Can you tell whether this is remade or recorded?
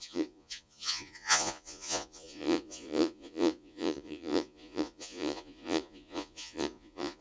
remade